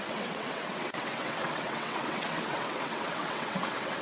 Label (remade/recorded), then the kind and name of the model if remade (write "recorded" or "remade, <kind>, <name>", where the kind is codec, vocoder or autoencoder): remade, vocoder, WaveNeXt